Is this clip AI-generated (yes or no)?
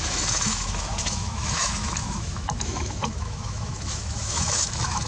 yes